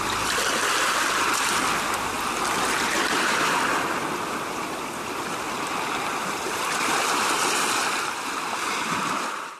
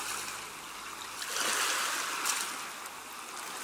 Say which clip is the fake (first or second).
first